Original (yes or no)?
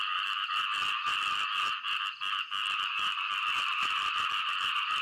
no